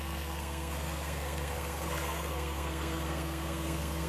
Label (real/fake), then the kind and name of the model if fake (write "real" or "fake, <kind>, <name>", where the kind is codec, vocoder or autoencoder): fake, codec, SNAC